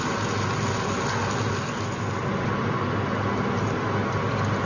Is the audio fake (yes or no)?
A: no